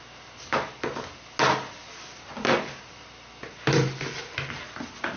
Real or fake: real